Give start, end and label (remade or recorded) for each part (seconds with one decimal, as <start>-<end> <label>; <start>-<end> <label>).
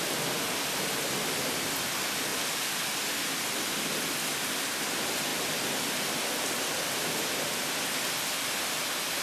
0.0-9.2 recorded